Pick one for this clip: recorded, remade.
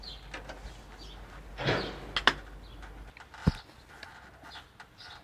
recorded